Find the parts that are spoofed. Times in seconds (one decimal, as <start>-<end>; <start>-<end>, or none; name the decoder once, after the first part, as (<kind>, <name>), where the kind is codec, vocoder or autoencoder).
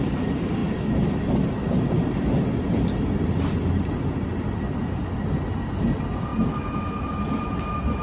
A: none